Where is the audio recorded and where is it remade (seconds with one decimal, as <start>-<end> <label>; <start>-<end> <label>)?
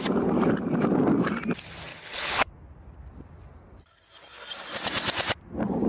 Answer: 0.0-1.9 recorded; 1.9-2.5 remade; 2.5-5.9 recorded